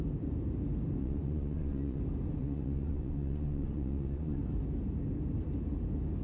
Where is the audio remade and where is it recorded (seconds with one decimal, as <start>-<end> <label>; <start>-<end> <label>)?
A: 0.0-1.0 recorded; 1.0-2.0 remade; 2.0-2.4 recorded; 2.4-4.4 remade; 4.4-6.2 recorded